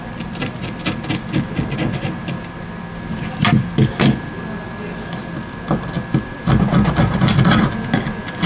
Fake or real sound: real